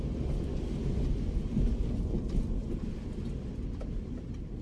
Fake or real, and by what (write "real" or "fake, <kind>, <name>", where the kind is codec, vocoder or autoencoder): real